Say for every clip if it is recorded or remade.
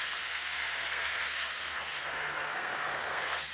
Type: remade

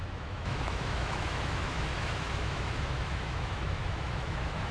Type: remade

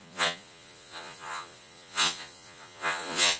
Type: remade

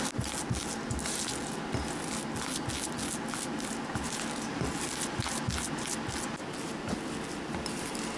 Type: recorded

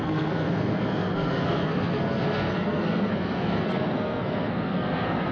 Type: remade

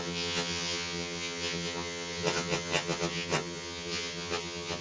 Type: remade